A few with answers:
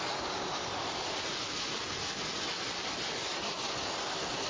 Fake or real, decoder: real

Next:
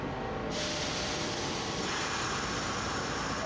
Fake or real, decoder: real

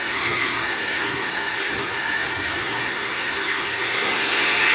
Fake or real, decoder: fake, codec, SNAC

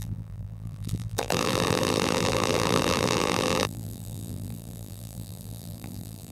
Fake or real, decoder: fake, vocoder, BigVGAN v2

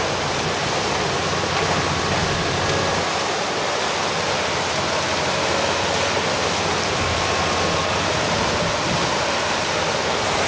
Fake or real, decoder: real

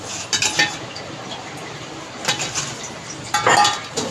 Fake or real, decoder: real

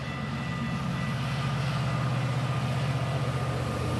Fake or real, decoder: real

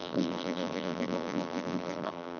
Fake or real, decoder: fake, vocoder, BigVGAN v2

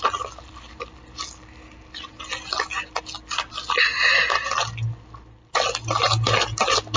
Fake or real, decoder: real